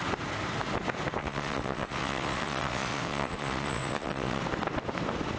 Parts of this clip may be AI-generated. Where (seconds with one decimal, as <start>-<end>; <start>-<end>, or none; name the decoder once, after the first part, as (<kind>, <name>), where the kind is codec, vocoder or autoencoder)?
1.2-4.4 (vocoder, WaveNeXt)